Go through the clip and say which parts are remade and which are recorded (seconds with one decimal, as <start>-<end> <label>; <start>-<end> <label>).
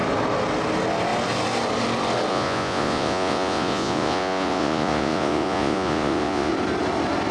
0.0-2.3 recorded; 2.3-6.5 remade; 6.5-7.3 recorded